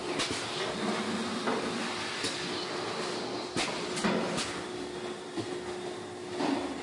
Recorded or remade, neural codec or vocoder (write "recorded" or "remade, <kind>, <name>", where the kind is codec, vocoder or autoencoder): recorded